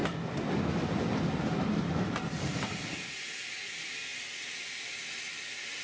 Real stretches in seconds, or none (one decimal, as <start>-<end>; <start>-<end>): 0.0-5.8